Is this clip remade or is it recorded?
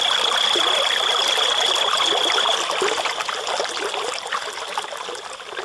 recorded